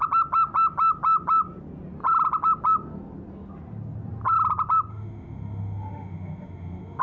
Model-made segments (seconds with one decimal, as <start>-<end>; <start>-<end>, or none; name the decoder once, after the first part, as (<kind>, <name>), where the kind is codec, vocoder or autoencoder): 4.9-7.0 (autoencoder, DAC-VAE)